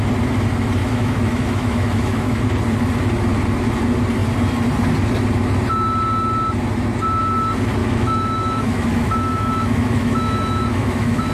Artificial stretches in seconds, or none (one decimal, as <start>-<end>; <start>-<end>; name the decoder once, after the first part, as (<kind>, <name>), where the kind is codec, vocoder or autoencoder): 0.8-2.4 (autoencoder, DAC-VAE); 7.8-11.3